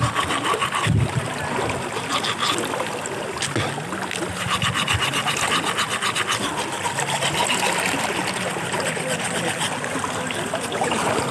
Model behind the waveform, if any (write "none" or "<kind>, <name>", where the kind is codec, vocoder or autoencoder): none